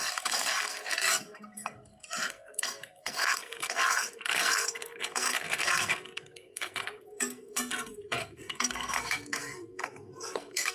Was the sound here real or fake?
fake